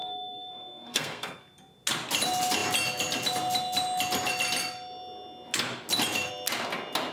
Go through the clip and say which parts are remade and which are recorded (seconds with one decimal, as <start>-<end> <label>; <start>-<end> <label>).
0.0-1.4 remade; 1.4-7.1 recorded